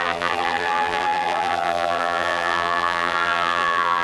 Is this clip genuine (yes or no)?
no